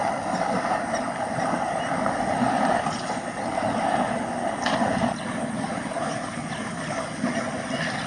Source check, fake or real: real